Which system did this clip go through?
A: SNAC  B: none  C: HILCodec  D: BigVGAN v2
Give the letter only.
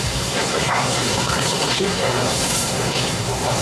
A